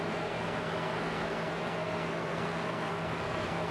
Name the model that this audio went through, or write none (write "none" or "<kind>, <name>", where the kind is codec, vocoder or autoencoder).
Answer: codec, SNAC